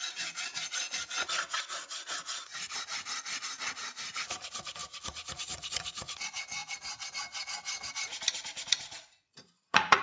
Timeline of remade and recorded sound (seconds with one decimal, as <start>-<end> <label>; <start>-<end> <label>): 0.0-2.5 remade; 2.5-3.4 recorded; 3.4-6.6 remade; 6.6-7.9 recorded; 7.9-10.0 remade